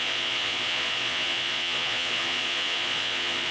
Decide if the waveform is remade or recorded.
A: remade